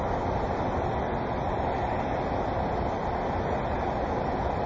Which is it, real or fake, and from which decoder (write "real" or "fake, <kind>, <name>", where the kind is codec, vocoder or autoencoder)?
real